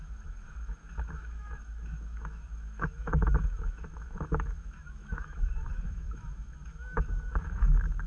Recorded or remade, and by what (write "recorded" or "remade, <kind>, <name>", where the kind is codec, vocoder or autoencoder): remade, autoencoder, DAC-VAE